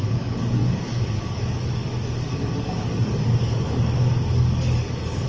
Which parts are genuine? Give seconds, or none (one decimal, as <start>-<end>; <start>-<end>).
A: none

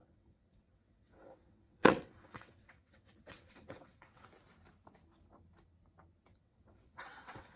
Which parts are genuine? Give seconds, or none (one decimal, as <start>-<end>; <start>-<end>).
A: 4.3-6.3

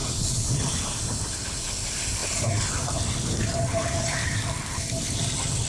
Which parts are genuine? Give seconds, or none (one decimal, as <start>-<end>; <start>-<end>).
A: 0.0-5.7

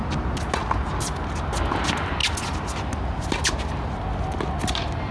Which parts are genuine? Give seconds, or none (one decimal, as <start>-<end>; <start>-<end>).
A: 0.0-5.1

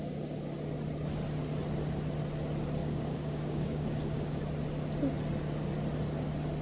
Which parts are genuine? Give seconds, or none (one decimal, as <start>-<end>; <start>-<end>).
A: 0.0-2.8; 4.4-6.6

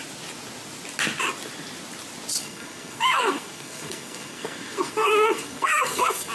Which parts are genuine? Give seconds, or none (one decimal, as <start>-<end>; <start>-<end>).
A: 0.0-2.4